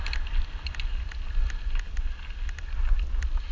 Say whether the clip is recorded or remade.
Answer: recorded